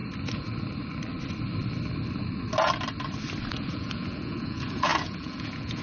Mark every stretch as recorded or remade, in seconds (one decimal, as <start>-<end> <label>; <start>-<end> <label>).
0.0-3.5 recorded; 3.5-5.8 remade